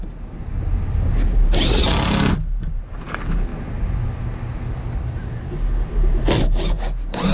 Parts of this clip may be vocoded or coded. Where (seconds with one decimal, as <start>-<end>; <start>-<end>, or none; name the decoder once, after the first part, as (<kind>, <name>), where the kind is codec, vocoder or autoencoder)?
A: none